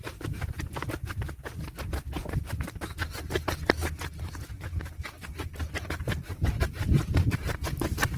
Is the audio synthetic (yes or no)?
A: no